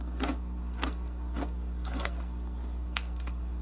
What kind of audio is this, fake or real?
fake